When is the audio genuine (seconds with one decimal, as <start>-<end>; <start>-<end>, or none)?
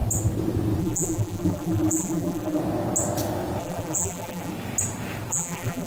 0.0-0.8; 2.6-3.6; 4.5-5.3